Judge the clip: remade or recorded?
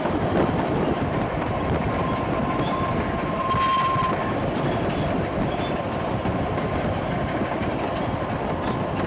recorded